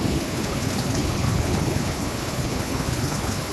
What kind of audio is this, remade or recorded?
remade